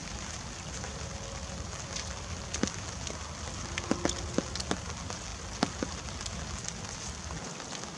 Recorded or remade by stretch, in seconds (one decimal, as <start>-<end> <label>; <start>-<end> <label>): 0.0-8.0 recorded